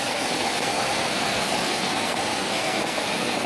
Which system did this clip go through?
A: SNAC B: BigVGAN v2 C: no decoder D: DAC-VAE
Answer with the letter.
A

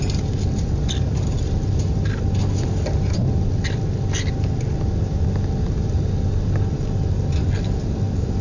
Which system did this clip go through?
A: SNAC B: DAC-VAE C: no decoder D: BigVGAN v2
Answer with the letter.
C